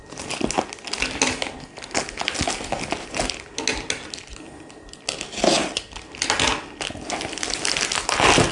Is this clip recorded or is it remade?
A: recorded